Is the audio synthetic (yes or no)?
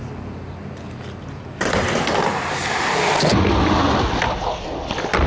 no